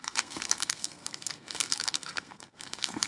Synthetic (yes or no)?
yes